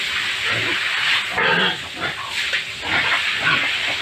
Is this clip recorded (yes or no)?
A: yes